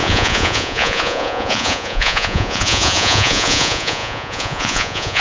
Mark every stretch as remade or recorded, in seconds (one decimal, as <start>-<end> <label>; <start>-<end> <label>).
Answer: 0.0-5.2 remade